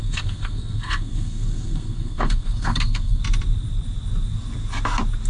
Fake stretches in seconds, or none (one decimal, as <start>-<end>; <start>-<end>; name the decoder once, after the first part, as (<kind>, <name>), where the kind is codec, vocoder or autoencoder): 0.0-3.2 (codec, SNAC)